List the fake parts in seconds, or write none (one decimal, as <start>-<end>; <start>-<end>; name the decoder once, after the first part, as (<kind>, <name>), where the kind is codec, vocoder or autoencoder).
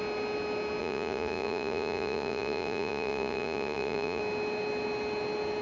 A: 0.8-4.2 (vocoder, Vocos)